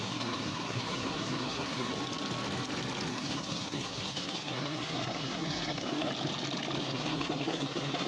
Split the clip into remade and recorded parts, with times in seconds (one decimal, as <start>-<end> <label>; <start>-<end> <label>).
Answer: 0.0-1.9 remade; 1.9-3.1 recorded; 3.1-6.1 remade; 6.1-6.8 recorded; 6.8-8.1 remade